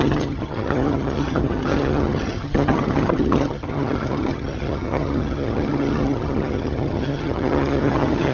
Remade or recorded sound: remade